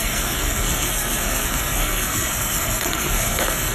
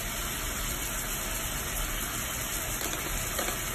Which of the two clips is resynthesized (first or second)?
first